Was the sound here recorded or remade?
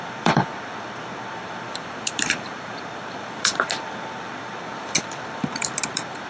remade